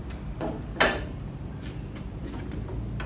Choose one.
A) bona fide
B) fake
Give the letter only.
A